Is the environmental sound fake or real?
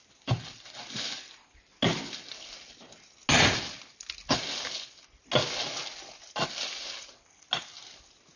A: real